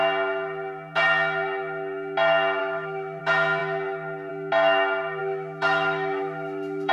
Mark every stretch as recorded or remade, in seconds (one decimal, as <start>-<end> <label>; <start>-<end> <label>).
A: 0.0-2.6 recorded; 2.6-3.2 remade; 3.2-5.2 recorded; 5.2-6.9 remade